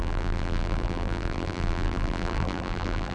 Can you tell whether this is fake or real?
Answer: fake